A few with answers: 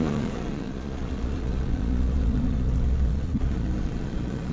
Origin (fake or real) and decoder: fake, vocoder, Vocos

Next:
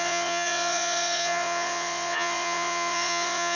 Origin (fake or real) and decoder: fake, vocoder, Vocos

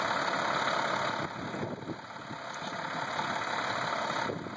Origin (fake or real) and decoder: real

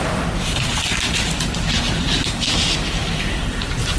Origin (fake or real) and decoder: real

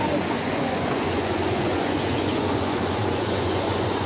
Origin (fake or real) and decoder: fake, vocoder, Vocos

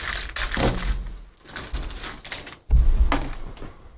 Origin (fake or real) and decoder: real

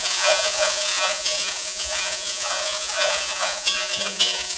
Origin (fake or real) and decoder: fake, vocoder, Vocos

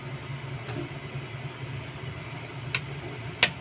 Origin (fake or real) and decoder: real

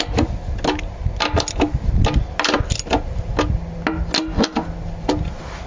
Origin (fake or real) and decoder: real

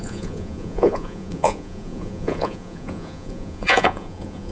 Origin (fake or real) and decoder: fake, vocoder, Vocos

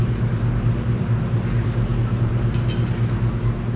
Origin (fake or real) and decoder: real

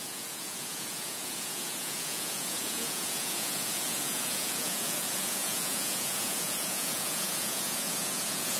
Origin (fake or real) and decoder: fake, vocoder, Vocos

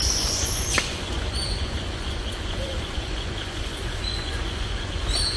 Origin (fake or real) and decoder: fake, vocoder, Vocos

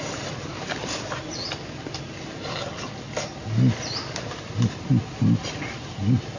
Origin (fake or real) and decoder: real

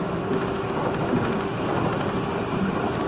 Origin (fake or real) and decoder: real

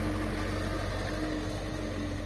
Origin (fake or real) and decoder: real